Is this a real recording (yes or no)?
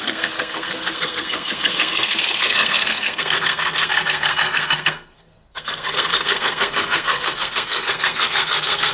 no